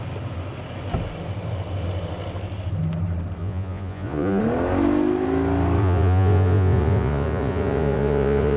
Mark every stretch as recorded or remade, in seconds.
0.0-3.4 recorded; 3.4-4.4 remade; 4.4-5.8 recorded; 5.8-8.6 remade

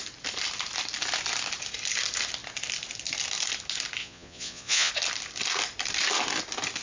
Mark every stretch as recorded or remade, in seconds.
0.0-4.0 recorded; 4.0-4.9 remade; 4.9-6.8 recorded

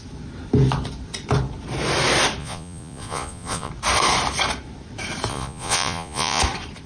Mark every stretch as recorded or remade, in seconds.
0.0-2.4 recorded; 2.4-3.7 remade; 3.7-5.3 recorded; 5.3-6.4 remade; 6.4-6.9 recorded

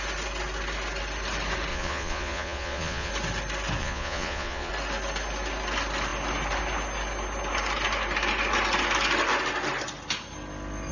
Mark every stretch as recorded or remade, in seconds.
0.0-1.7 recorded; 1.7-3.1 remade; 3.1-3.8 recorded; 3.8-4.7 remade; 4.7-10.9 recorded

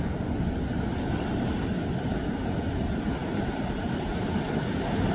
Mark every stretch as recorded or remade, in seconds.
0.0-5.1 recorded

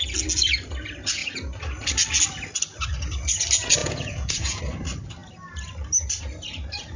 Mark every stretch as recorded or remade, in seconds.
0.0-3.8 recorded; 3.8-4.6 remade; 4.6-7.0 recorded

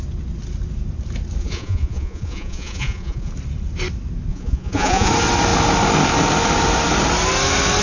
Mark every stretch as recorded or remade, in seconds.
0.0-1.4 recorded; 1.4-3.3 remade; 3.3-4.3 recorded; 4.3-5.1 remade; 5.1-7.8 recorded